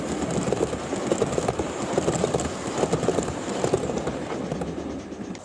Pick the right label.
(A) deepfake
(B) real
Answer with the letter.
B